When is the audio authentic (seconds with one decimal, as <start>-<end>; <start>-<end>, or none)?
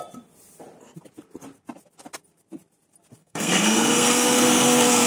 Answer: 0.0-3.2